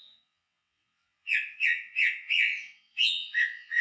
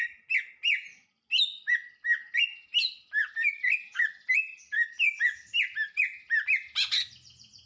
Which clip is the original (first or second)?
second